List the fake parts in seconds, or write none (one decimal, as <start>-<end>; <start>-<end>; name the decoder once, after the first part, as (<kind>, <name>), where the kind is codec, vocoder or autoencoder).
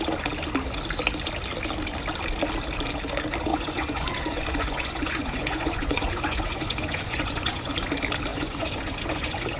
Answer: 3.5-7.7 (vocoder, Vocos); 8.3-9.6